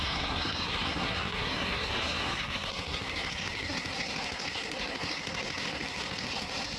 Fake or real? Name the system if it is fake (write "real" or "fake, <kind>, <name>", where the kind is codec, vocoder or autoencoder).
fake, codec, SNAC